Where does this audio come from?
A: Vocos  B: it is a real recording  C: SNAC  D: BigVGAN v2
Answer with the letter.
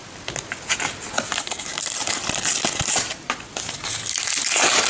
B